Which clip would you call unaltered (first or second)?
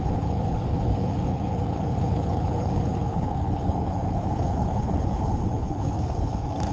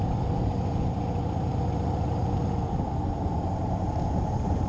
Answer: second